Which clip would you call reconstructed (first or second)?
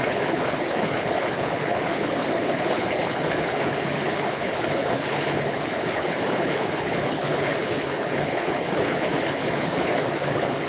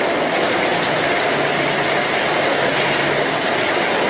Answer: first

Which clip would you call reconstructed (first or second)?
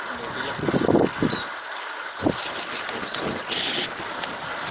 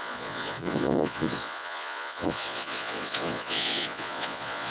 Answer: second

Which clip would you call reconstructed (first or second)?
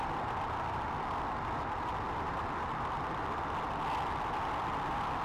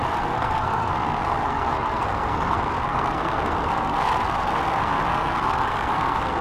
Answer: second